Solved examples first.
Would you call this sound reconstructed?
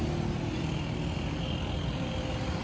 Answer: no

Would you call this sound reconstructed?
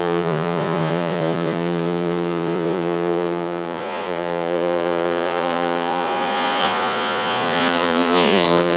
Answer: yes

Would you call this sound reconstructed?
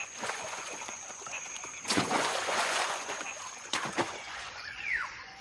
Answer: yes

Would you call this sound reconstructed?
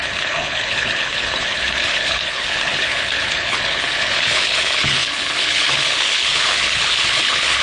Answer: yes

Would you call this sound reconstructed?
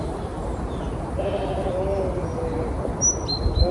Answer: no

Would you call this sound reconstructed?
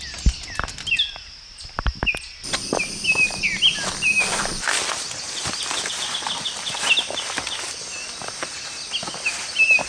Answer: no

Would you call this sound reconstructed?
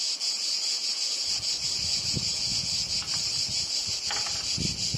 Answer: no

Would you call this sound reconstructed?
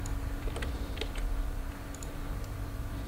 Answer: yes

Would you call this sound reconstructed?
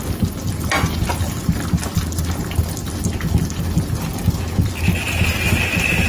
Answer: no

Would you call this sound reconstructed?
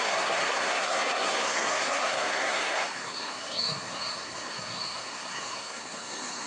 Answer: yes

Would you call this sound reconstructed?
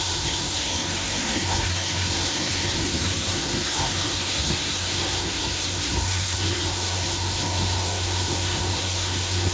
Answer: yes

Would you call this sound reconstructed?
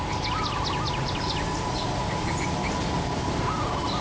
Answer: no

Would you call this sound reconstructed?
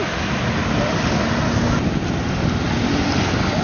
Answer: no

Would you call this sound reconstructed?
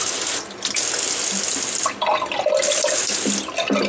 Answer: no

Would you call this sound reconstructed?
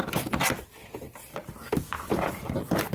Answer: no